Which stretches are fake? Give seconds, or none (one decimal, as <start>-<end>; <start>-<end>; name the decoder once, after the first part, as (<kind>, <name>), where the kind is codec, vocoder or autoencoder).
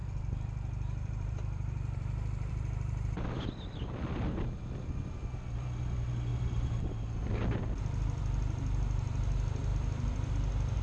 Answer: 0.0-3.5 (vocoder, BigVGAN v2); 6.3-7.0; 9.7-10.3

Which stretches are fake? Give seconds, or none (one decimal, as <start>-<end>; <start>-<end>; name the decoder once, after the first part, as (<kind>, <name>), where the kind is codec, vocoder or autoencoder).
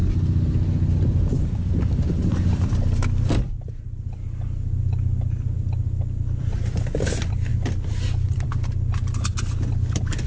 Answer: 1.3-10.3 (vocoder, BigVGAN v2)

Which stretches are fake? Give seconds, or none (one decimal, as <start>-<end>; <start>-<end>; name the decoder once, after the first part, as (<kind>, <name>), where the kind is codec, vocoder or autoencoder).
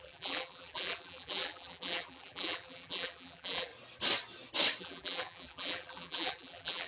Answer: 0.0-3.7 (vocoder, BigVGAN v2); 4.8-6.9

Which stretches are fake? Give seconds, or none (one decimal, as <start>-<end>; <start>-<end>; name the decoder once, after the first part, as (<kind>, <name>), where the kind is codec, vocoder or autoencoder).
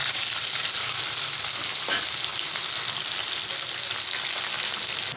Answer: 0.0-1.0 (vocoder, BigVGAN v2)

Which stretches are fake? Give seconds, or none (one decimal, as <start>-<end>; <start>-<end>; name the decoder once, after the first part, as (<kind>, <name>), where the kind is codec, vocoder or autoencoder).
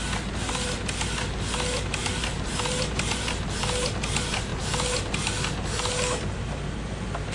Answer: 2.2-3.3 (vocoder, BigVGAN v2)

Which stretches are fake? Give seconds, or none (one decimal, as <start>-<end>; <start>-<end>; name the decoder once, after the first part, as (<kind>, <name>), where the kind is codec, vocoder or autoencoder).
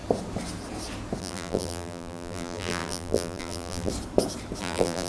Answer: 1.2-3.9 (vocoder, BigVGAN v2); 4.6-5.1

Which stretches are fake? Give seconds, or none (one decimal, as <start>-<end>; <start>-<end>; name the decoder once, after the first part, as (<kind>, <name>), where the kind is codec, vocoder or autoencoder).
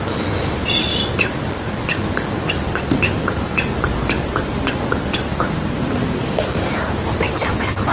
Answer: 0.9-5.1 (vocoder, BigVGAN v2)